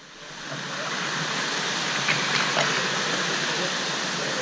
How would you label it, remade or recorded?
recorded